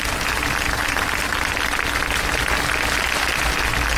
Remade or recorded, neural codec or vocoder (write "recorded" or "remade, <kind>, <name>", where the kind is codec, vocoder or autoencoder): recorded